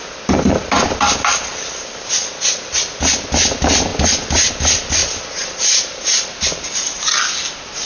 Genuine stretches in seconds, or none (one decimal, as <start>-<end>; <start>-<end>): 0.0-7.9